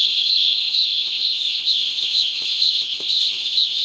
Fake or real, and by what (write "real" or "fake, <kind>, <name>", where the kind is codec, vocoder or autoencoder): fake, codec, ZipCodec